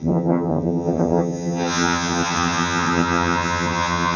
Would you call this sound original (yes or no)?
no